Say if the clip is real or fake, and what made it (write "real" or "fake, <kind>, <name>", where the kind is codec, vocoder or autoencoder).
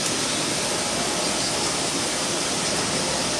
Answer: real